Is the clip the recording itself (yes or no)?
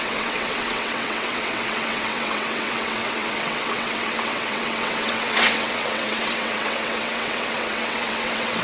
no